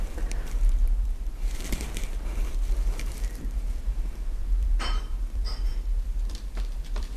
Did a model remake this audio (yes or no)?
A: yes